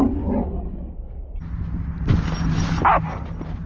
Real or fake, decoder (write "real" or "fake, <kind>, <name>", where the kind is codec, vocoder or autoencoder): real